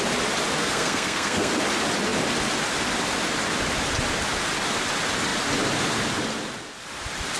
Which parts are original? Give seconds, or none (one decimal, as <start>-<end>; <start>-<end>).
0.0-0.6; 1.5-7.4